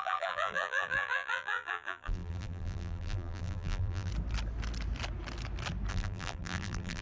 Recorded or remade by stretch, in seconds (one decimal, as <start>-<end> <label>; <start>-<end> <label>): 0.0-4.1 remade; 4.1-5.9 recorded; 5.9-7.0 remade